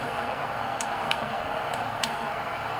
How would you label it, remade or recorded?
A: remade